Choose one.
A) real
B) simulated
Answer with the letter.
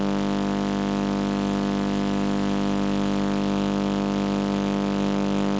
A